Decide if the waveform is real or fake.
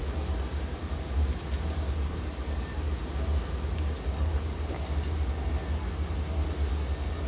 real